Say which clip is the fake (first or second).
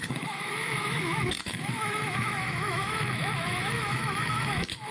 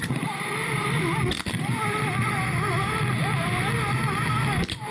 first